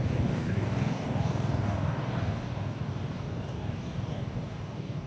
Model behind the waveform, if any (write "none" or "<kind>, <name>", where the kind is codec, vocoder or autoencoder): codec, DAC